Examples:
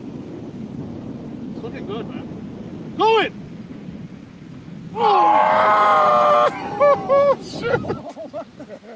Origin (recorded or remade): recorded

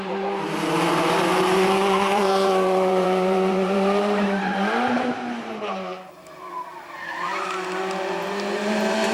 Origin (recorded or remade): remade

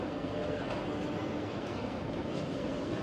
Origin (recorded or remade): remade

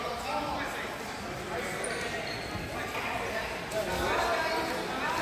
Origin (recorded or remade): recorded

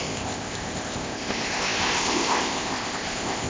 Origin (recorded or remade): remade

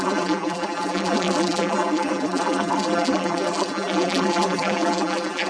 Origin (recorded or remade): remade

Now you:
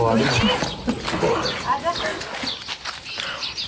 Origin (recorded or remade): recorded